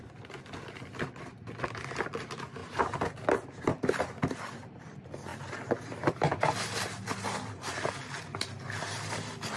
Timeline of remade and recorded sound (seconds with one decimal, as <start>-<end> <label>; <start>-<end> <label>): 0.0-9.6 recorded